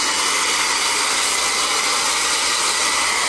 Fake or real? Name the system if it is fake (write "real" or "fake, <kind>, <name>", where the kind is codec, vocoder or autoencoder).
real